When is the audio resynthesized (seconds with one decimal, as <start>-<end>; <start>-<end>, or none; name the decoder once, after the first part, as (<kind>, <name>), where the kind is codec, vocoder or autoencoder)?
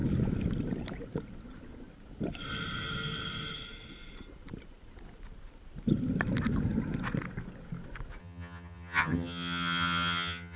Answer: 8.2-10.6 (vocoder, HiFi-GAN)